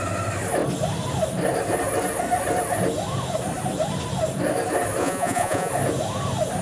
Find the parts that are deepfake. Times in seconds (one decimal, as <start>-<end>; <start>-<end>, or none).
5.0-5.7